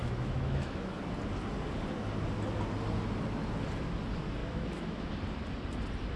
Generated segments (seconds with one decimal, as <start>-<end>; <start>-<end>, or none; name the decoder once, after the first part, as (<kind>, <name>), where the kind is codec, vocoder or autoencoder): 0.0-1.0 (autoencoder, DAC-VAE); 4.4-5.1